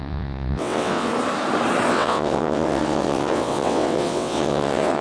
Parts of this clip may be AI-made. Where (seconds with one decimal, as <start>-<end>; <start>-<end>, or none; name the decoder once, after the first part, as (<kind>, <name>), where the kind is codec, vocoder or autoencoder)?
0.0-1.1 (vocoder, WaveNeXt); 1.9-5.0